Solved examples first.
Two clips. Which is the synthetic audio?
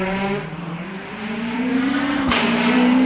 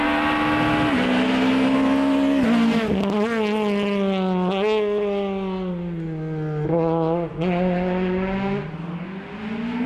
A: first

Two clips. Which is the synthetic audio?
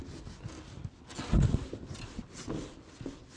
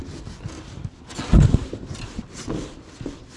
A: second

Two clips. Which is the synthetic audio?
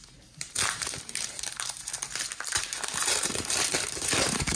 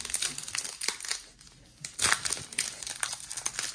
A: first